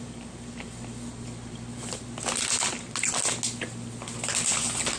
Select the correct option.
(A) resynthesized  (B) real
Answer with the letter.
B